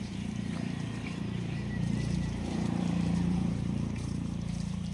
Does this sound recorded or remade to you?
remade